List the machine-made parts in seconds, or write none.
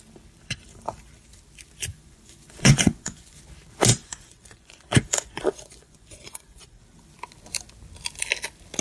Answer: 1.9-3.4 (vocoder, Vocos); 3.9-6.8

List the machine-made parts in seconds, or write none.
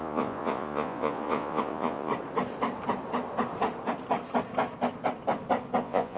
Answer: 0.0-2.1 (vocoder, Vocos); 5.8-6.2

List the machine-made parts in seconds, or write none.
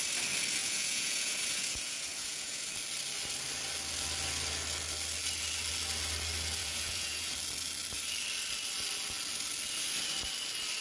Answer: 0.6-2.7 (vocoder, Vocos); 6.6-7.3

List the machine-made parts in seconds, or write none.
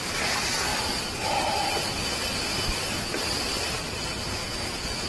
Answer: 4.4-5.1 (vocoder, Vocos)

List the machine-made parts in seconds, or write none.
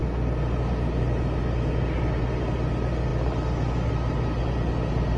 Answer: none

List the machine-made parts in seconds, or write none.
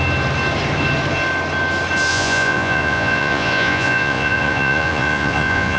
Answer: 2.1-5.8 (vocoder, Vocos)